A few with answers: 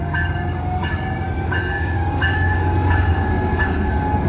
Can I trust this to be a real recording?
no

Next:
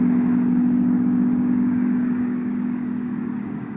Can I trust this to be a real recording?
no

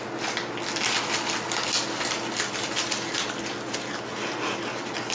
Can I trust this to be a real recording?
yes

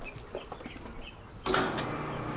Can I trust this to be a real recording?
yes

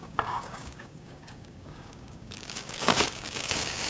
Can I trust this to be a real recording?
no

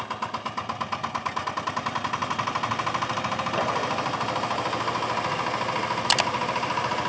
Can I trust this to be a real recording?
yes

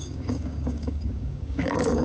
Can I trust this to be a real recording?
no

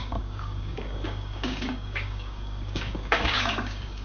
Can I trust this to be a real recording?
no